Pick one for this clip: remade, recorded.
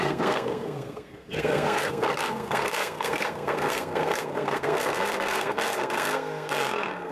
remade